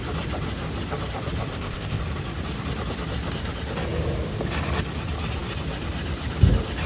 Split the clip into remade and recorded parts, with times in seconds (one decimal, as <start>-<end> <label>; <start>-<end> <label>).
0.0-1.5 recorded; 1.5-2.0 remade; 2.0-6.9 recorded